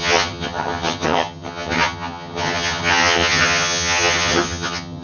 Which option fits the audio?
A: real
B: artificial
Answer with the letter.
B